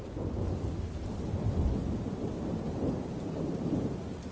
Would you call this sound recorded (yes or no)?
yes